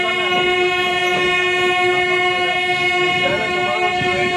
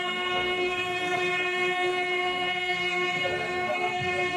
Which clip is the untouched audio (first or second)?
first